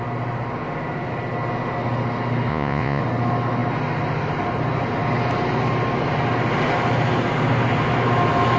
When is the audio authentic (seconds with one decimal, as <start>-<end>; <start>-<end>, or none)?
0.0-2.5; 3.0-8.6